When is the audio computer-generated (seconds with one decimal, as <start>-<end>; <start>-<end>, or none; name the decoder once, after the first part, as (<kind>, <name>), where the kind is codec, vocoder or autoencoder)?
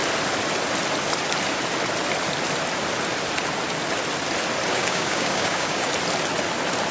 4.7-5.9 (codec, DAC)